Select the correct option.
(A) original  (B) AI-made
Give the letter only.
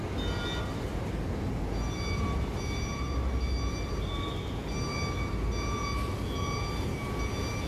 A